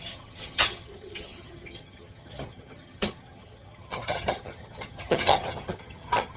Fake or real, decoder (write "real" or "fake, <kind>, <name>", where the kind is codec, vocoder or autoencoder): fake, vocoder, HiFi-GAN